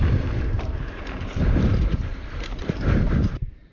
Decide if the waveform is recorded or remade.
remade